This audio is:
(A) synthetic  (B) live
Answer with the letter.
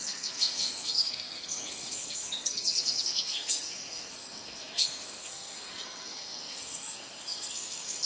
A